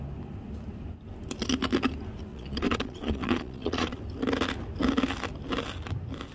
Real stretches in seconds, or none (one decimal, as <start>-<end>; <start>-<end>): 0.0-2.3; 4.0-6.3